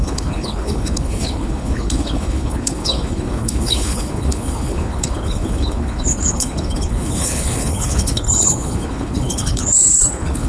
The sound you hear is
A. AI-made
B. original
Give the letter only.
A